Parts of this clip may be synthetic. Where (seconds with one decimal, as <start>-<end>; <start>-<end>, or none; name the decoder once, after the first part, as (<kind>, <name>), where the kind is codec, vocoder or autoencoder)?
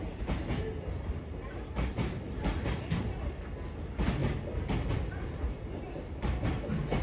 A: none